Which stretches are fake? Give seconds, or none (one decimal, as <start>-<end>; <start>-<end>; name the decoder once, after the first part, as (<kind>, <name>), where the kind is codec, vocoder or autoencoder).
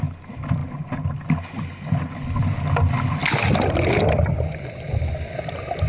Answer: none